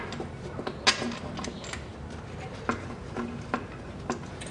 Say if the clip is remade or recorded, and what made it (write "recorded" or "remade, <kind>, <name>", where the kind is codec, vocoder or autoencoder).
recorded